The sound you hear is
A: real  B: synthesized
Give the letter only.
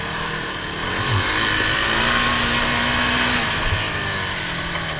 A